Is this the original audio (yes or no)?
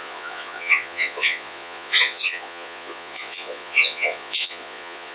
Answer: no